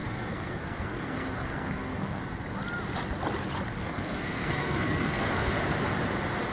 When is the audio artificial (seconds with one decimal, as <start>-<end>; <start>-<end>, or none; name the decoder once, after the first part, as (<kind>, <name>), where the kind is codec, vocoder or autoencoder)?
0.0-2.2 (codec, SNAC); 3.8-5.5